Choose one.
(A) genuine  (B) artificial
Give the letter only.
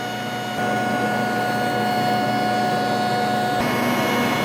A